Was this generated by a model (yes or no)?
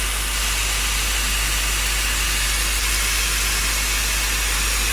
no